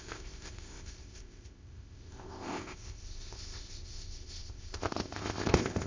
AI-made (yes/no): yes